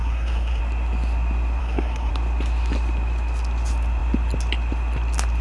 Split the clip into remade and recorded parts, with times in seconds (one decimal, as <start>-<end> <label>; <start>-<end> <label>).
0.0-0.6 remade; 0.6-1.6 recorded; 1.6-2.1 remade; 2.1-5.4 recorded